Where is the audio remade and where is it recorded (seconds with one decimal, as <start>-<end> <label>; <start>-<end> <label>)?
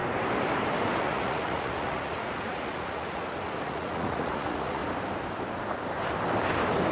0.0-1.0 recorded; 1.0-4.8 remade; 4.8-6.9 recorded